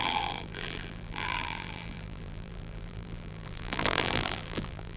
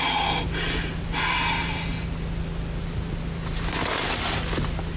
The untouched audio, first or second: second